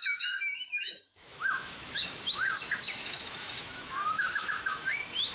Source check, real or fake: fake